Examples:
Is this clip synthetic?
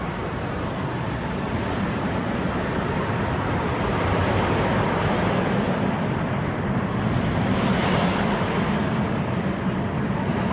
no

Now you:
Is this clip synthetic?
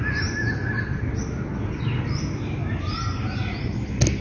no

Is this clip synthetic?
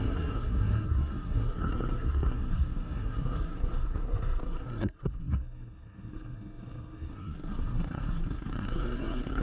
yes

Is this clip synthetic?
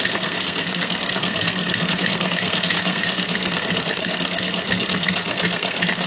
yes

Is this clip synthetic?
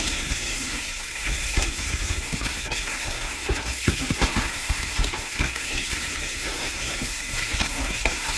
yes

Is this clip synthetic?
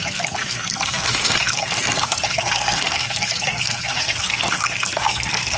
yes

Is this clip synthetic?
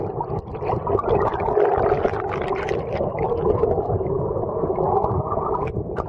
no